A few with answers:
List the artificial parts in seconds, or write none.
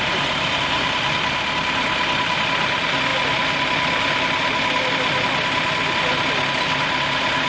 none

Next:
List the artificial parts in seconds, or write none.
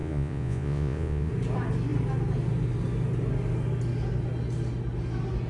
0.0-1.3 (vocoder, Vocos)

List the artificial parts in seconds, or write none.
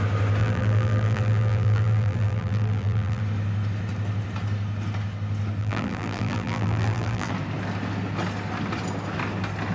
0.4-3.2 (vocoder, BigVGAN v2); 5.6-7.3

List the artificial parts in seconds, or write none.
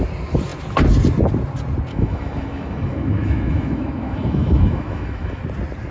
1.9-5.4 (autoencoder, DAC-VAE)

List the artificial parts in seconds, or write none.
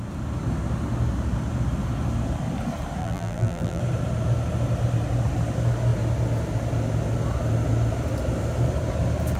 3.0-3.8 (vocoder, BigVGAN v2)